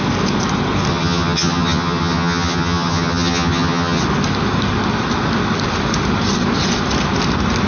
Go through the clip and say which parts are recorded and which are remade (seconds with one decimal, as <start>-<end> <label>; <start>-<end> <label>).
0.0-0.9 recorded; 0.9-4.0 remade; 4.0-7.7 recorded